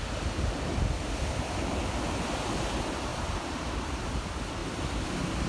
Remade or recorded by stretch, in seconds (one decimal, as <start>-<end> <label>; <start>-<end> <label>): 0.0-3.1 recorded; 3.1-4.0 remade; 4.0-5.5 recorded